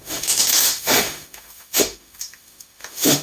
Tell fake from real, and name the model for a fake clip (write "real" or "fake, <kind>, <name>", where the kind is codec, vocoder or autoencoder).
fake, autoencoder, DAC-VAE